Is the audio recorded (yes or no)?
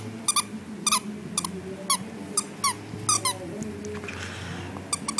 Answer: yes